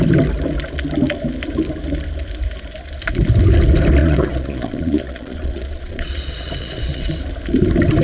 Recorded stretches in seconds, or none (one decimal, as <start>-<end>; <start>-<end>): 0.0-4.0; 7.1-8.0